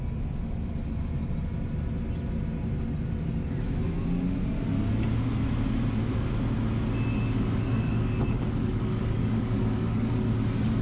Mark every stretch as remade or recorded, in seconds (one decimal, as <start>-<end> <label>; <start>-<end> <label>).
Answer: 0.0-7.1 recorded; 7.1-10.3 remade; 10.3-10.8 recorded